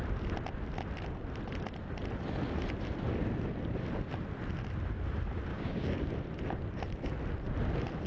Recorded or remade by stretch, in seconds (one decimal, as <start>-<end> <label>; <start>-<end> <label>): 0.0-5.5 recorded; 5.5-6.1 remade; 6.1-8.1 recorded